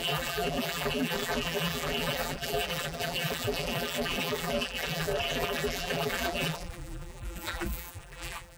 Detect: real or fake fake